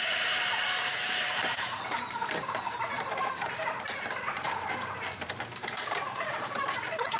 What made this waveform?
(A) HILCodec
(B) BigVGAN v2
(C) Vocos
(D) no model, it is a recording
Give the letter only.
B